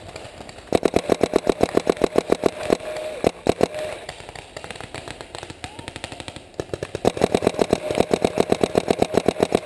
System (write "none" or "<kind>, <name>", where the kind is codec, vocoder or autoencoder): none